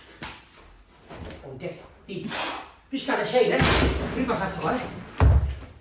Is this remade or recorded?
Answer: recorded